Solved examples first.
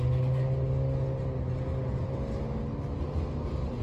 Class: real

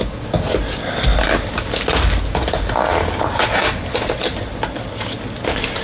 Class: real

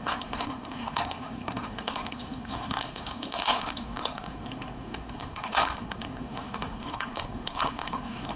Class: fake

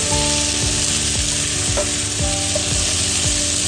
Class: real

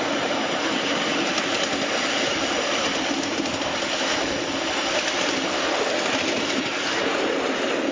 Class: real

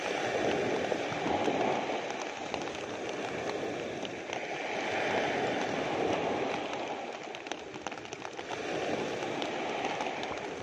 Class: real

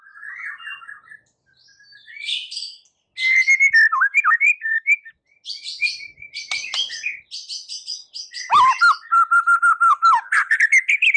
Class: real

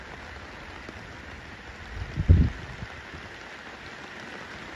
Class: real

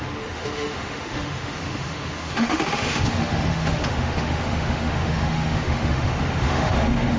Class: fake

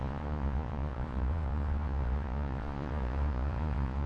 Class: fake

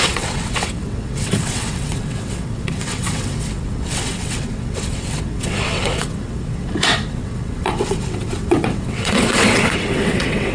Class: fake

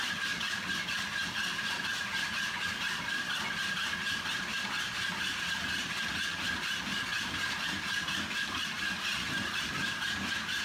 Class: real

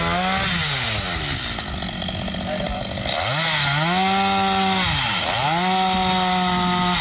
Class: real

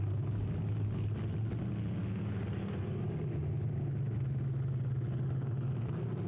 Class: real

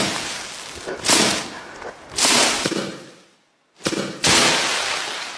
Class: real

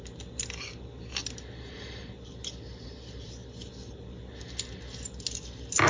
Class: real